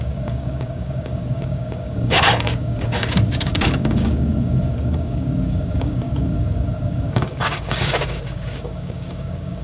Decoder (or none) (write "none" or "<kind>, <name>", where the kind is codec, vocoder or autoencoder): codec, DAC